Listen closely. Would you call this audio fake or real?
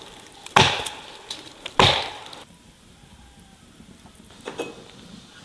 real